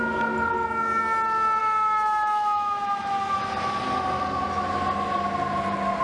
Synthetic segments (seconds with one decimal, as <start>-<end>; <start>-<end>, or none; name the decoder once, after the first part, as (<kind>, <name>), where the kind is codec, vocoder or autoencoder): 1.6-3.4 (autoencoder, DAC-VAE)